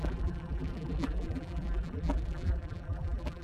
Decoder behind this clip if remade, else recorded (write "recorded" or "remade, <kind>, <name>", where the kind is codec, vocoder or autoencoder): remade, vocoder, BigVGAN v2